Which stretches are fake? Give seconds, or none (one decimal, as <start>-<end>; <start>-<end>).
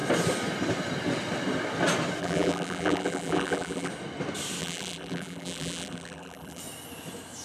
2.2-3.9; 4.6-6.6